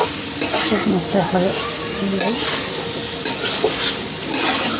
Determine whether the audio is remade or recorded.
recorded